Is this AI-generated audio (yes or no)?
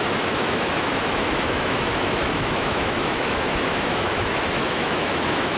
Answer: yes